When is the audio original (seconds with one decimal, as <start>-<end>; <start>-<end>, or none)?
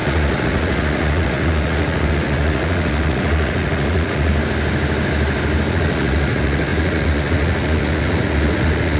4.3-5.7